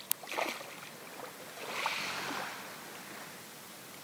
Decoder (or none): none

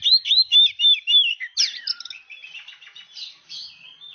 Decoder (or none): none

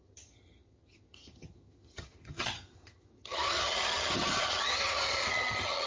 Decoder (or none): vocoder, HiFi-GAN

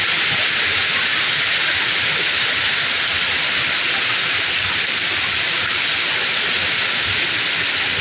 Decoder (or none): none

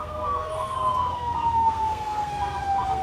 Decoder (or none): codec, SNAC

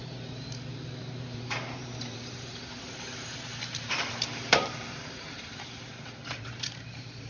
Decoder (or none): vocoder, BigVGAN v2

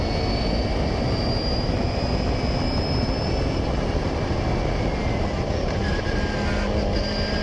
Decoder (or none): none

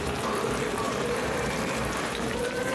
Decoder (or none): vocoder, BigVGAN v2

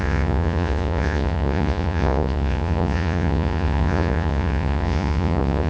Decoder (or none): vocoder, Vocos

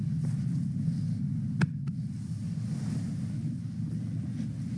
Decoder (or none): none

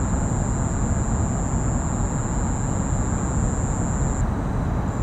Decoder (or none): none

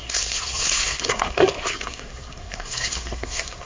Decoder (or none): codec, SNAC